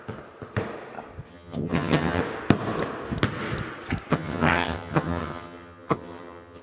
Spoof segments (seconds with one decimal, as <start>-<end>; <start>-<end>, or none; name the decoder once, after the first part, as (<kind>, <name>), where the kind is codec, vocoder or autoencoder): 1.3-2.2 (vocoder, HiFi-GAN); 4.1-6.6